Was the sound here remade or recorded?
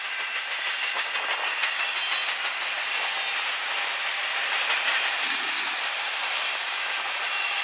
recorded